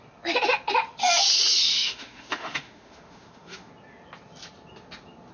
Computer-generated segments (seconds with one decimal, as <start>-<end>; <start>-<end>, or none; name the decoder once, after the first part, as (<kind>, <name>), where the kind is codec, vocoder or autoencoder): 1.7-3.7 (autoencoder, DAC-VAE)